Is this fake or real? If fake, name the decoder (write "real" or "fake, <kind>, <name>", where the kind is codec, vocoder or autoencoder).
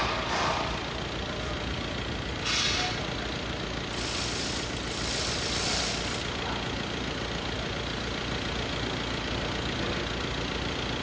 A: real